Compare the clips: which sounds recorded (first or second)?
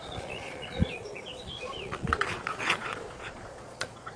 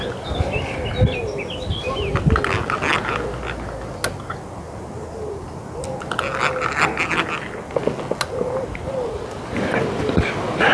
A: second